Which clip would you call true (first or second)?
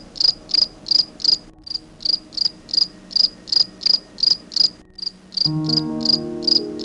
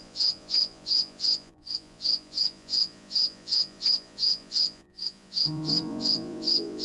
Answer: first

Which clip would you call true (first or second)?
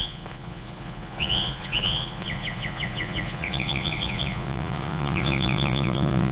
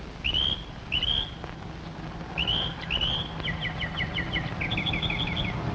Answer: second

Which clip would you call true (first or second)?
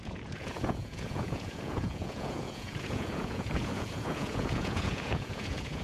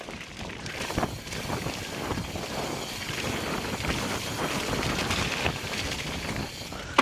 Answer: second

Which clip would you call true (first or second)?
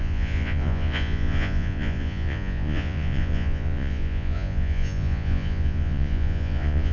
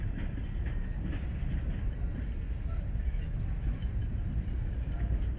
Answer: second